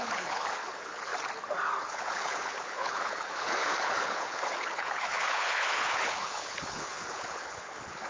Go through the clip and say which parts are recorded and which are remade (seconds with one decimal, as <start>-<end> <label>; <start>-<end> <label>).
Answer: 0.0-1.1 remade; 1.1-1.8 recorded; 1.8-8.1 remade